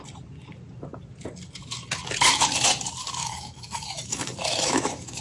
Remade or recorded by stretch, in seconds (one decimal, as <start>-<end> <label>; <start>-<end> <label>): 0.0-3.2 recorded; 3.2-5.2 remade